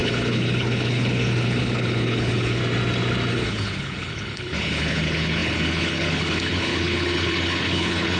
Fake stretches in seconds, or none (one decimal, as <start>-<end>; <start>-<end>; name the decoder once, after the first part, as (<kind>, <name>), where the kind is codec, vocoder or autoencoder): 0.0-2.6 (codec, HILCodec); 3.3-8.2